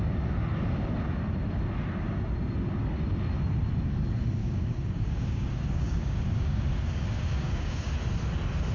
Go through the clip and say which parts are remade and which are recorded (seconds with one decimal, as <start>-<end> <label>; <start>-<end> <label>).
0.0-4.4 recorded; 4.4-7.9 remade; 7.9-8.7 recorded